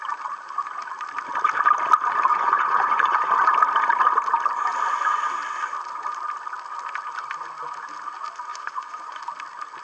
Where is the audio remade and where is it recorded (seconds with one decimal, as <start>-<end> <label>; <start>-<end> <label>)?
0.0-2.3 recorded; 2.3-3.3 remade; 3.3-8.5 recorded; 8.5-9.2 remade; 9.2-9.8 recorded